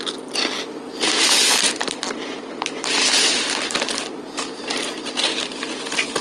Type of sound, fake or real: real